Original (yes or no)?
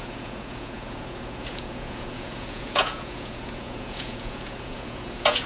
no